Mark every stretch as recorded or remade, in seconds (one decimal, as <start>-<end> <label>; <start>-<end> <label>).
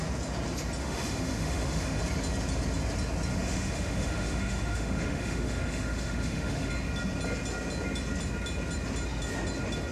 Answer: 0.0-0.8 recorded; 0.8-2.0 remade; 2.0-3.3 recorded; 3.3-6.7 remade; 6.7-9.9 recorded